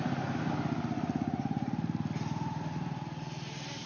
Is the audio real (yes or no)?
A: yes